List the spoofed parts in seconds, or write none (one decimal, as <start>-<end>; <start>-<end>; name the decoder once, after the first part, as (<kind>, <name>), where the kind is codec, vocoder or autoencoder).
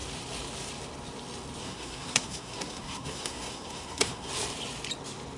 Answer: 1.6-4.3 (codec, SNAC)